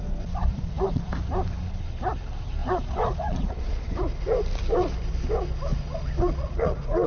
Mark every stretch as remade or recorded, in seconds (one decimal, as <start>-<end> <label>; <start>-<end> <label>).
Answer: 0.0-0.4 recorded; 0.4-1.1 remade; 1.1-2.6 recorded; 2.6-4.0 remade; 4.0-5.7 recorded; 5.7-7.1 remade